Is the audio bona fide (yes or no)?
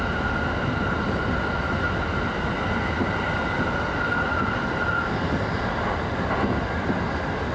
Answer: yes